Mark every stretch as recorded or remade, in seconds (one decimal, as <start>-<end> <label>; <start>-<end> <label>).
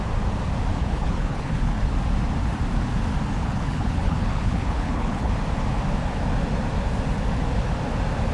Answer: 0.0-0.8 recorded; 0.8-1.9 remade; 1.9-3.4 recorded; 3.4-5.3 remade; 5.3-8.3 recorded